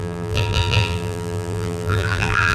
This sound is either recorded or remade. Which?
remade